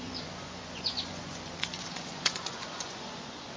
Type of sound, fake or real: fake